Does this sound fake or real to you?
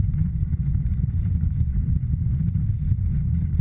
fake